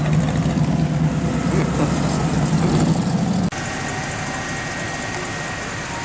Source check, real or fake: real